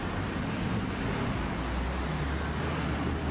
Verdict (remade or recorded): recorded